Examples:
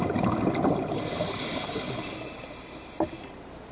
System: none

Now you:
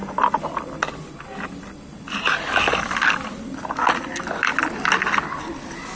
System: none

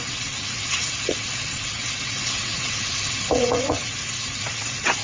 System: vocoder, WaveNeXt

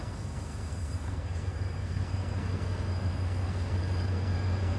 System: codec, SNAC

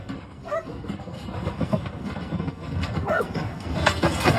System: codec, SNAC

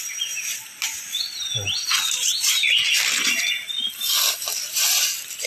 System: none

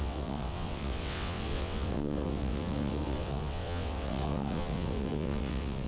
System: vocoder, WaveNeXt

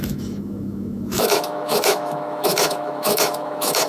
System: autoencoder, DAC-VAE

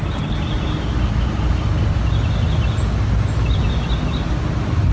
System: none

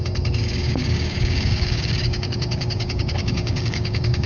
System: codec, DAC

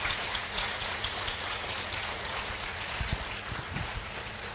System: vocoder, Vocos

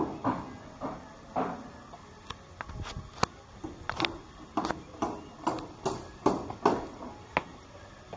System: none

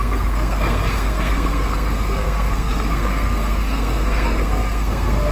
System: codec, SNAC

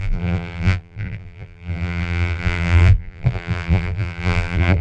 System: vocoder, BigVGAN v2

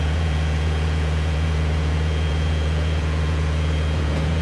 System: vocoder, Vocos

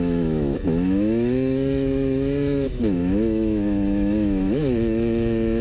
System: autoencoder, DAC-VAE